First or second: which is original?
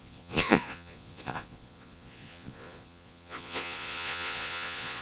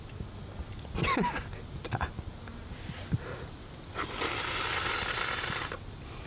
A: second